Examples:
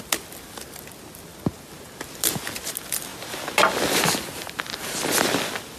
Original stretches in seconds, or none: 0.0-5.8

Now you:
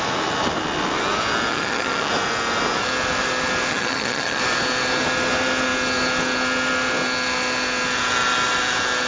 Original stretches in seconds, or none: 0.0-1.5; 2.1-3.7; 4.4-9.1

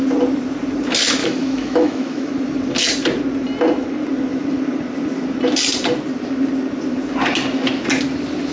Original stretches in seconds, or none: 0.0-1.2; 2.3-8.5

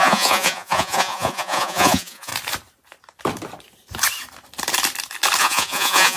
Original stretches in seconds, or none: 2.3-5.4

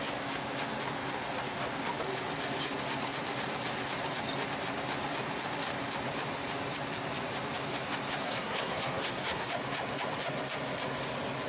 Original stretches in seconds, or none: 0.0-8.2; 9.5-11.5

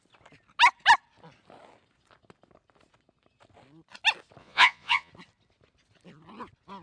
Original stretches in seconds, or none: 0.0-4.4; 5.1-6.8

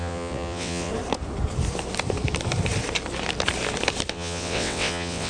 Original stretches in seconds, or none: 0.9-4.1

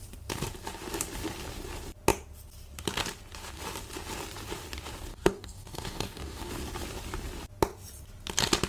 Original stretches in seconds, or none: 0.0-5.1; 6.5-8.7